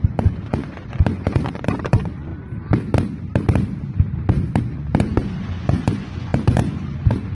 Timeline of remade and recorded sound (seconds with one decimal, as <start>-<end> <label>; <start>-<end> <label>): 0.0-2.3 remade; 2.3-4.6 recorded; 4.6-7.3 remade